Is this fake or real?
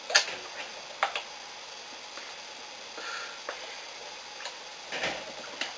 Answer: real